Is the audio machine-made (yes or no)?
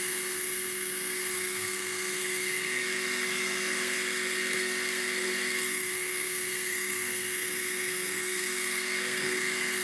yes